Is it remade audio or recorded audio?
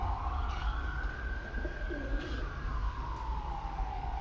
remade